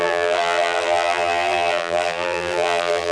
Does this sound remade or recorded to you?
remade